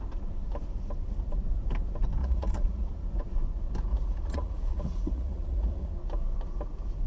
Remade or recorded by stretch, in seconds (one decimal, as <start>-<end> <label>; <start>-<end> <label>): 0.0-2.2 recorded; 2.2-2.9 remade; 2.9-3.9 recorded; 3.9-5.9 remade; 5.9-7.1 recorded

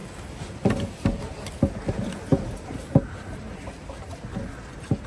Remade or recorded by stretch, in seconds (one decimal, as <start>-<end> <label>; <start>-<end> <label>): 0.0-5.1 recorded

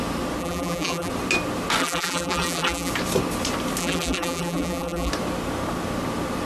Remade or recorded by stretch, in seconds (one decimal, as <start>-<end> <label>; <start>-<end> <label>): 0.0-0.4 recorded; 0.4-1.1 remade; 1.1-1.8 recorded; 1.8-2.9 remade; 2.9-3.8 recorded; 3.8-5.1 remade; 5.1-6.5 recorded

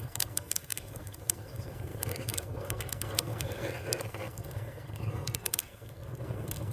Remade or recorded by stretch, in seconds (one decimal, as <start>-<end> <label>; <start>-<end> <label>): 0.0-6.7 remade

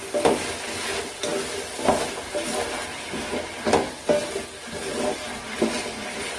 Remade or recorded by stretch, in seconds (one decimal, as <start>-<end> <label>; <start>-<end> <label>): 0.0-6.4 recorded

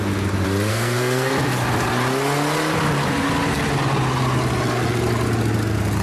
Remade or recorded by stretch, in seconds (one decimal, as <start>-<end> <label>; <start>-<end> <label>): 0.0-0.7 recorded; 0.7-1.3 remade; 1.3-6.0 recorded

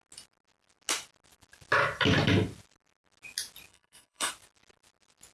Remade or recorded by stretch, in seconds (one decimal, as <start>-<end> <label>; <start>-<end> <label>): 0.0-3.7 recorded; 3.7-4.3 remade; 4.3-5.3 recorded

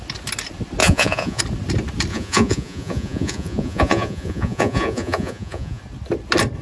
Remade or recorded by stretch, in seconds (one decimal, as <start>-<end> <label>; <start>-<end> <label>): 0.0-0.8 recorded; 0.8-1.4 remade; 1.4-2.1 recorded; 2.1-5.8 remade; 5.8-6.6 recorded